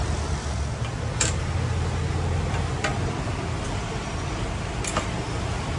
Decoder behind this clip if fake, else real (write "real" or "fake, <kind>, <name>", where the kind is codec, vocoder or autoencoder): real